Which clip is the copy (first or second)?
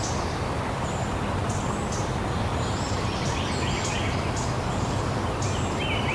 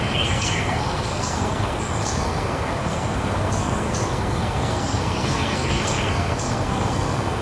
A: second